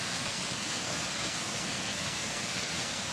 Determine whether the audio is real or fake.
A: fake